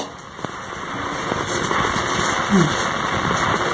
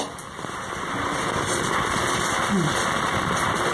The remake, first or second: second